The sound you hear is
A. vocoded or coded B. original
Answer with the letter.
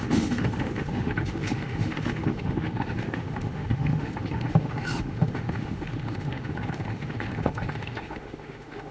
A